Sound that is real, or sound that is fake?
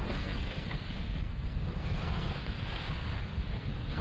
fake